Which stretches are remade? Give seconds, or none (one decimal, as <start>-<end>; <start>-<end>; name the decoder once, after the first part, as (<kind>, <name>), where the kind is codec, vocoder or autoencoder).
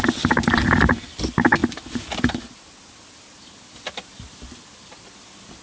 none